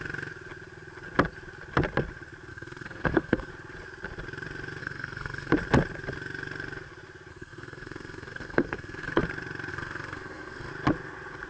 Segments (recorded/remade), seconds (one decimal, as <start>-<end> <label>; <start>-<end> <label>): 0.0-2.5 recorded; 2.5-3.5 remade; 3.5-4.8 recorded; 4.8-5.5 remade; 5.5-7.3 recorded; 7.3-9.2 remade; 9.2-9.7 recorded; 9.7-10.7 remade; 10.7-11.5 recorded